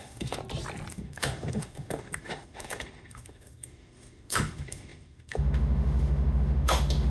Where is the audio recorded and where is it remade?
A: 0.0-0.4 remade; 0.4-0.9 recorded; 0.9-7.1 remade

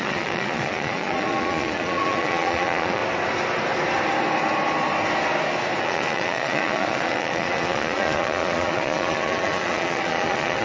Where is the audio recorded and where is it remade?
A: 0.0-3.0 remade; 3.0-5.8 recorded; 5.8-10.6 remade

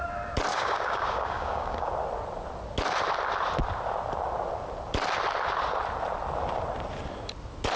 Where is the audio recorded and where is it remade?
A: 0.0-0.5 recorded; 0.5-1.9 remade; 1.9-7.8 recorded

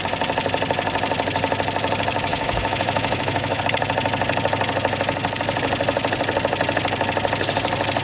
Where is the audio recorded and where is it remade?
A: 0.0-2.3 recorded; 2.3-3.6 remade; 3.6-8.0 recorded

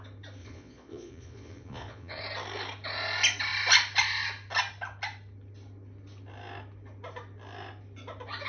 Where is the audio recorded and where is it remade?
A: 0.0-0.4 recorded; 0.4-2.2 remade; 2.2-8.5 recorded